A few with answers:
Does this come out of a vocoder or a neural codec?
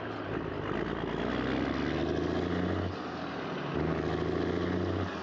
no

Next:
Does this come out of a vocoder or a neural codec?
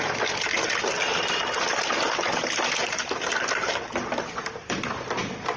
no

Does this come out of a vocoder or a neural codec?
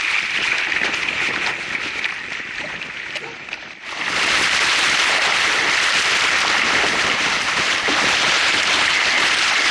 no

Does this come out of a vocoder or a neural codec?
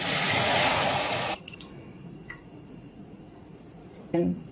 yes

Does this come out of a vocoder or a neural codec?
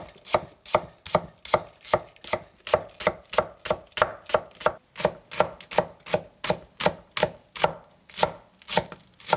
no